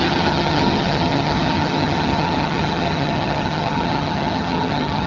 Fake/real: fake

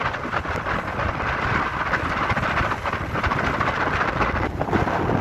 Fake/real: real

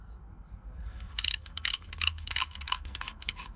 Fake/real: fake